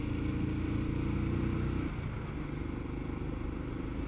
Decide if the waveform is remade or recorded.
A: recorded